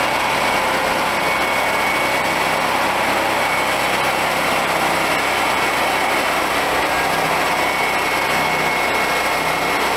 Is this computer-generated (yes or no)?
no